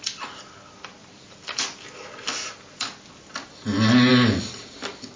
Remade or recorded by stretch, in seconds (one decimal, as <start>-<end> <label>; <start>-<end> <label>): 0.0-5.2 recorded